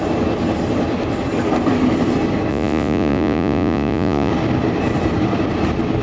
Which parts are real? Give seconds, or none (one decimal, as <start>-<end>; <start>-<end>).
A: 0.0-2.5; 4.3-6.0